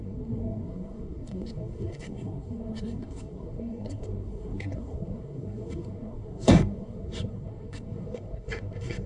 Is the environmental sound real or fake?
fake